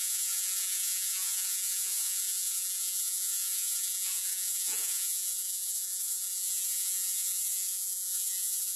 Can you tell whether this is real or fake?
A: fake